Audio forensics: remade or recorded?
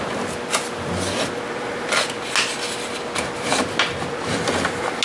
recorded